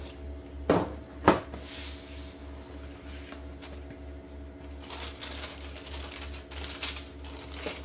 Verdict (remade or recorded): recorded